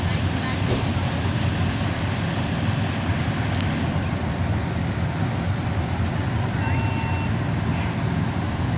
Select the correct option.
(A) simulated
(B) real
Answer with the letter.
B